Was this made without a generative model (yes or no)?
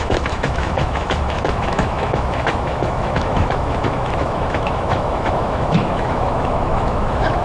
no